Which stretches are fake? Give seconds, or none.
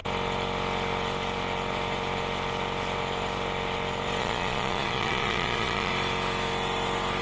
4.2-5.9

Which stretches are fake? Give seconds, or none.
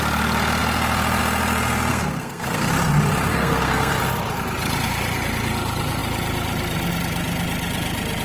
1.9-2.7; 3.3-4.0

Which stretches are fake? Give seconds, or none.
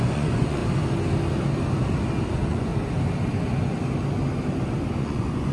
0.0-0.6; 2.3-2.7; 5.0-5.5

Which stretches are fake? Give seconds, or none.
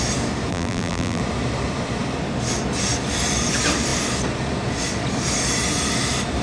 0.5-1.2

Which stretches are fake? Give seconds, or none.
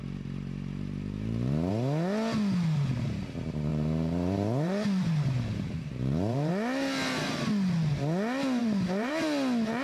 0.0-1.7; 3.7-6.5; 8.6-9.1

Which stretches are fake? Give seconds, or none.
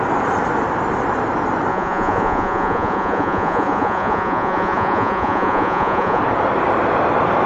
1.7-6.2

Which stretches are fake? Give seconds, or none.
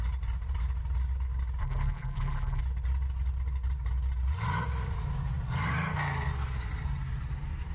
1.6-2.6